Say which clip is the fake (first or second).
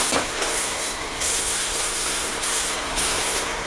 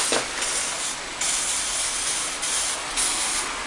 first